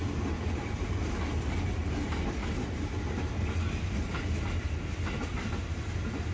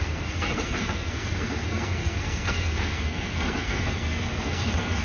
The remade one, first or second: second